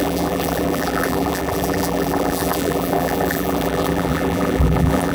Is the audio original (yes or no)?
no